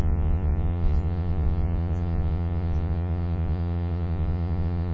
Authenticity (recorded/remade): remade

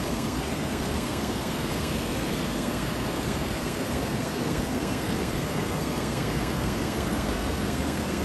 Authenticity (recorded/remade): remade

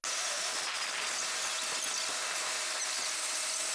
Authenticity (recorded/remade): recorded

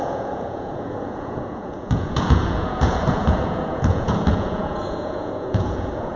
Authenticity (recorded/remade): remade